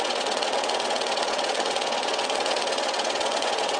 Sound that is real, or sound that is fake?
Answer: fake